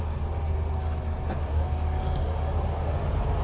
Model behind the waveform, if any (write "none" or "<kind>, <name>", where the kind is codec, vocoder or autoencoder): none